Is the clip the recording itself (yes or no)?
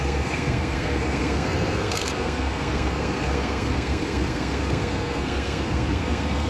no